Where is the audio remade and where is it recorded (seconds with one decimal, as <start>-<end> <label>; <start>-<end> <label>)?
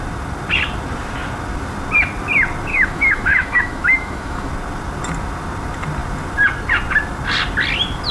0.0-2.7 recorded; 2.7-4.5 remade; 4.5-8.1 recorded